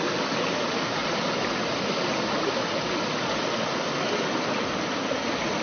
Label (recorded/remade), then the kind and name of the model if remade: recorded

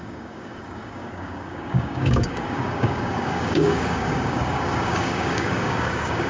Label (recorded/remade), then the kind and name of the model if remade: remade, codec, DAC